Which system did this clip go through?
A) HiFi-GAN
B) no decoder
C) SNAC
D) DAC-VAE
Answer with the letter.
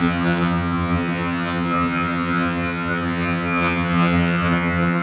A